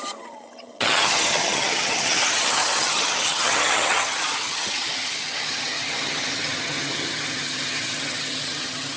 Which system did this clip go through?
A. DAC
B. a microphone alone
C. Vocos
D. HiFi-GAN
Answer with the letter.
D